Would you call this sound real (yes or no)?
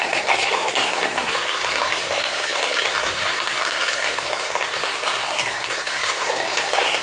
no